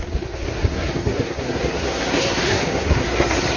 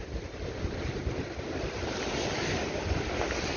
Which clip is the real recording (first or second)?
second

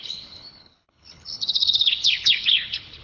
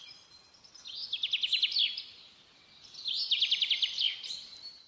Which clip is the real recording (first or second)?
second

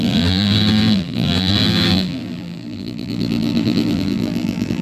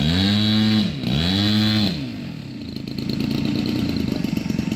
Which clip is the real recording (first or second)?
second